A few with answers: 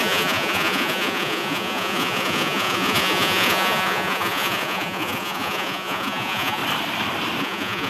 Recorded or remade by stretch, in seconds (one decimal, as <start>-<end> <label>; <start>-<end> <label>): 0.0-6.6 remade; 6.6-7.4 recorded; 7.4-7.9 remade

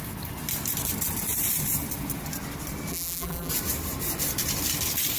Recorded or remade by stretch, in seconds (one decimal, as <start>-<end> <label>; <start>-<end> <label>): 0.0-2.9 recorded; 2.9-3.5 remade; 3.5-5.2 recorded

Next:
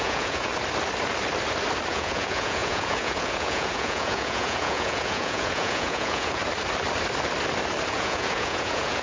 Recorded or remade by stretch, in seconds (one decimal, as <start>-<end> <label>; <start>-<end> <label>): 0.0-0.5 remade; 0.5-1.9 recorded; 1.9-6.4 remade; 6.4-7.9 recorded; 7.9-9.0 remade

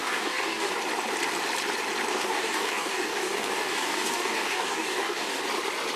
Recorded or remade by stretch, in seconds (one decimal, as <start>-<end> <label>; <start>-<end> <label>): 0.0-0.7 remade; 0.7-2.1 recorded; 2.1-5.4 remade; 5.4-6.0 recorded